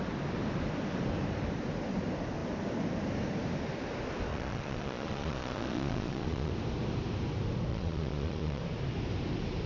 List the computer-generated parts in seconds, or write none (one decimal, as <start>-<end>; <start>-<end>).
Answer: 4.3-6.5; 7.7-8.6